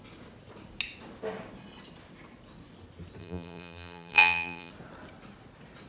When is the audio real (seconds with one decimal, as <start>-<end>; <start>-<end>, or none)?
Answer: 0.0-3.2; 4.7-5.9